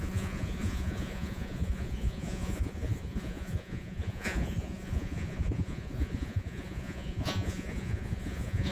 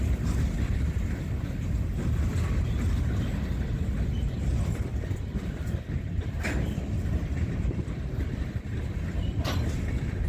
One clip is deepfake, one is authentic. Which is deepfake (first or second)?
first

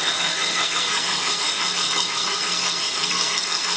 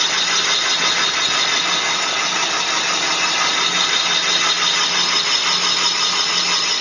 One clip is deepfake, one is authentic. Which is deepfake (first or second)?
first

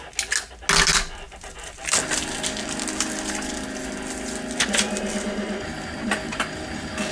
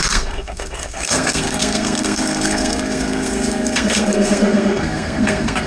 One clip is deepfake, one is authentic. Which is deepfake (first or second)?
second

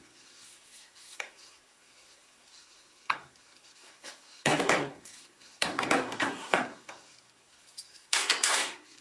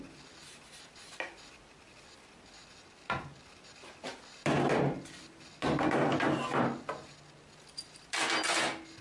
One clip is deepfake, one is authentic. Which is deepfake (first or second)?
first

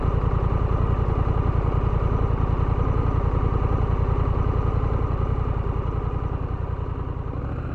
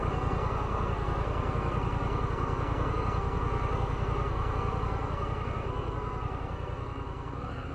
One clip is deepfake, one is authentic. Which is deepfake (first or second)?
second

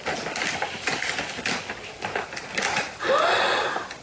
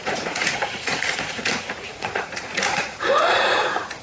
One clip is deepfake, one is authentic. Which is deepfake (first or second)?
second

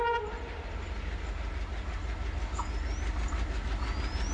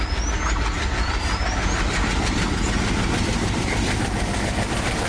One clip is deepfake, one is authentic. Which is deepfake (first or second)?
second